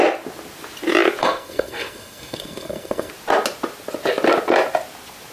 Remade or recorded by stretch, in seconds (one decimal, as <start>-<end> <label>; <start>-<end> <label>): 0.0-1.2 recorded; 1.2-3.1 remade; 3.1-5.3 recorded